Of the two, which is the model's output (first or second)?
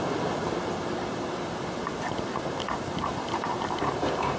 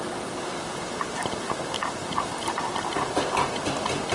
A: second